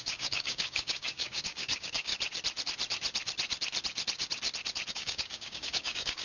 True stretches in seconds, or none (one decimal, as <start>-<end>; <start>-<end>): 2.1-4.9